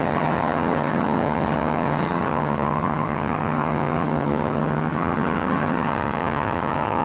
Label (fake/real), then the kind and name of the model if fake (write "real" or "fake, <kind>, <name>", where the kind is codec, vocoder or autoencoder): fake, vocoder, HiFi-GAN